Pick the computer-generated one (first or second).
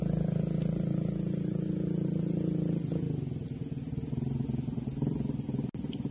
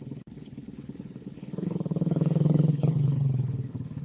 second